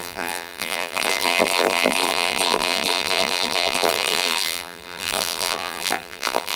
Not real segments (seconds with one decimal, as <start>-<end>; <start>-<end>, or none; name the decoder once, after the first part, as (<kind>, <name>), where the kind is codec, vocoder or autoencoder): 0.0-6.6 (vocoder, BigVGAN v2)